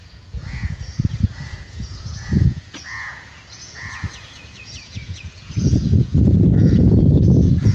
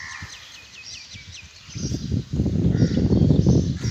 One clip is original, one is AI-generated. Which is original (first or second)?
second